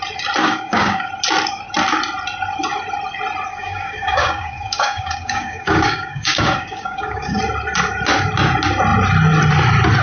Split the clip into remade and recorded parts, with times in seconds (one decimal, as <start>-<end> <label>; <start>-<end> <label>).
0.0-0.4 recorded; 0.4-1.1 remade; 1.1-3.5 recorded; 3.5-7.4 remade; 7.4-10.0 recorded